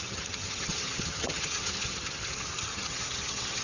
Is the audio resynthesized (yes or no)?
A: yes